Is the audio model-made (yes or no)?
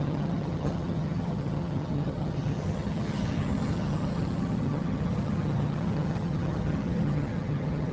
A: yes